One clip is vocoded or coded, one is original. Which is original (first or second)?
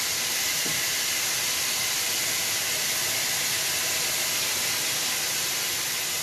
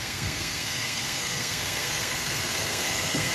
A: first